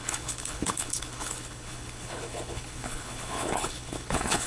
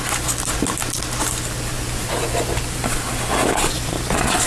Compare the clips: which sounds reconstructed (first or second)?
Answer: first